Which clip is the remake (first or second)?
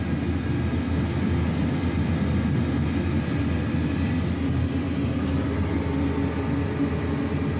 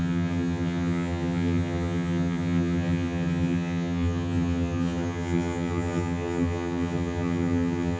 second